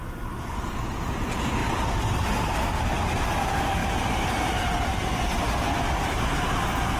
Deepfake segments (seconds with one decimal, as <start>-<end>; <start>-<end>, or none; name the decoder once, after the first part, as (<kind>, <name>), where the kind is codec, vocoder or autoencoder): none